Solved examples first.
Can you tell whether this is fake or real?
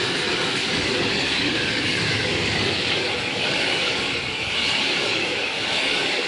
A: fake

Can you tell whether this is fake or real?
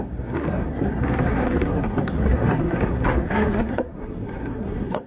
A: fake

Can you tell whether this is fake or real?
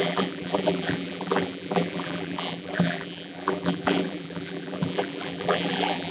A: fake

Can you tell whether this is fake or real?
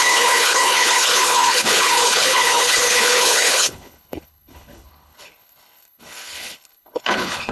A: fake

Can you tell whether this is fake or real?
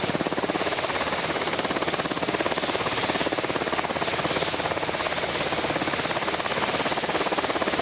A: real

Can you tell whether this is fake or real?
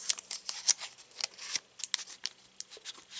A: real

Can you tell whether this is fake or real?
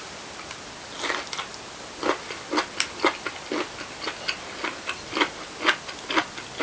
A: real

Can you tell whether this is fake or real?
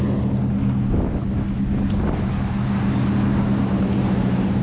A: real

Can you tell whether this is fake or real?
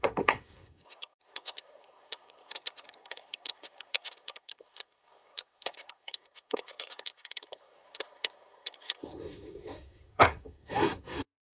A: fake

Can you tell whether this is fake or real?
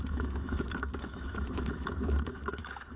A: fake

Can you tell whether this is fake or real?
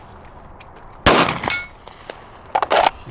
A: real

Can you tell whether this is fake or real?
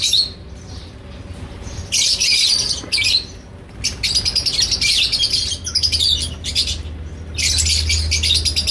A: real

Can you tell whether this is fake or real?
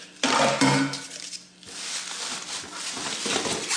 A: real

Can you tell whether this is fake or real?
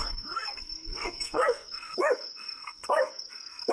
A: fake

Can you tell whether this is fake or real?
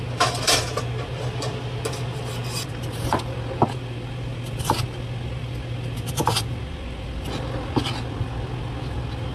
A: real